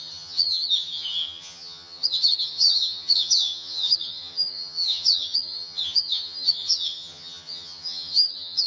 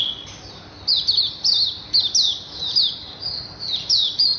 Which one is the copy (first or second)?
first